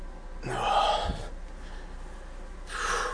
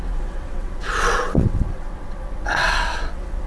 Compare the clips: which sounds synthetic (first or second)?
second